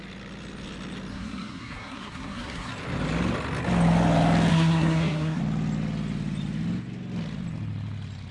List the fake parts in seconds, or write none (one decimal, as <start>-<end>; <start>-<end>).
1.1-2.7; 4.5-5.4